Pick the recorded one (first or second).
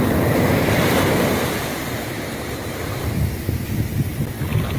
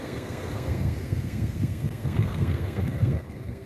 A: first